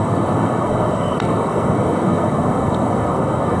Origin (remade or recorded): remade